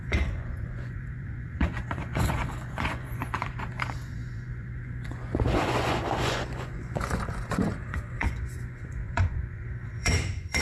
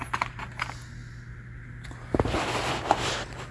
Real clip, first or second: second